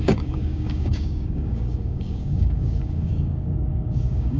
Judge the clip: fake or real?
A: fake